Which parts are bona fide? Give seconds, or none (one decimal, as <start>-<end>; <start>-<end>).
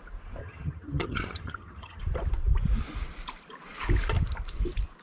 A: 0.0-0.4; 2.0-5.0